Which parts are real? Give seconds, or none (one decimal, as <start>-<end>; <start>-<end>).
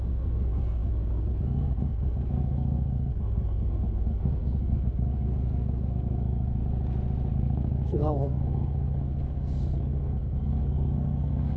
6.6-7.3